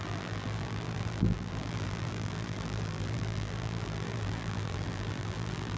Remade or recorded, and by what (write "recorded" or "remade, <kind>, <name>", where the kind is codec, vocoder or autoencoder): remade, vocoder, BigVGAN v2